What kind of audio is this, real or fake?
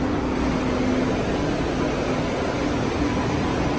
real